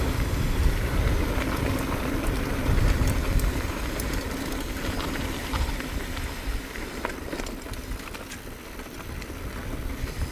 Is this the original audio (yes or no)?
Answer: yes